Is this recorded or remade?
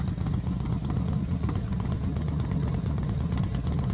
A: remade